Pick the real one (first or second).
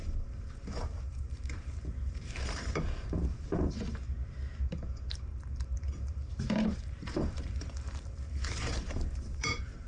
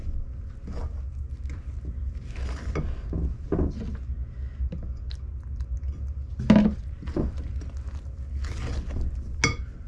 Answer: second